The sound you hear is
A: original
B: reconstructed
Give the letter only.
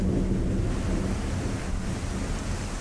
A